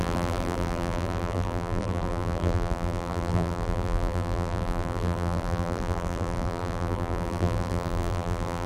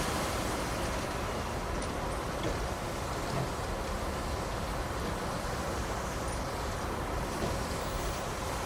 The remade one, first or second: first